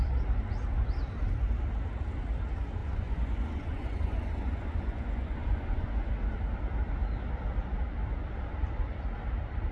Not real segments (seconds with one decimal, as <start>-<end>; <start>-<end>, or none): 2.8-6.1